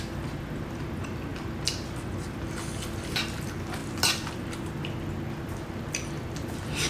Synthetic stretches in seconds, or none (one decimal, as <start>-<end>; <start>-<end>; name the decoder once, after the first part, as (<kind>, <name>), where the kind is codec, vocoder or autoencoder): none